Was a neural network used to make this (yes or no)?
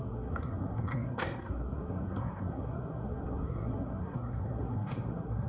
yes